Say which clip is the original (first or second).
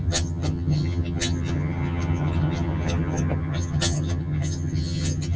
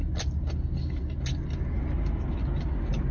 second